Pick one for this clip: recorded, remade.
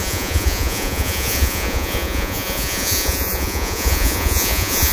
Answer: remade